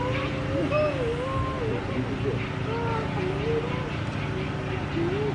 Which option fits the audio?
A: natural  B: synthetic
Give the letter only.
A